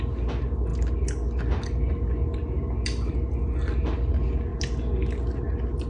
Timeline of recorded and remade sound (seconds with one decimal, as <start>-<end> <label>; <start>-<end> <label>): 0.0-5.9 recorded